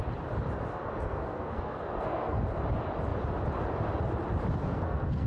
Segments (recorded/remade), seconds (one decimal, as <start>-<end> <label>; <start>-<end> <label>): 0.0-0.7 recorded; 0.7-2.4 remade; 2.4-4.6 recorded; 4.6-5.3 remade